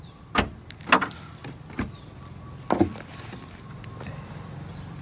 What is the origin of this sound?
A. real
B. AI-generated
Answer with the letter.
A